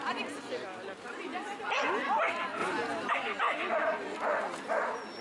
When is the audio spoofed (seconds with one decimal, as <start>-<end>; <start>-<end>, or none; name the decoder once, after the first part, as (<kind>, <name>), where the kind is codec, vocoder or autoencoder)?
none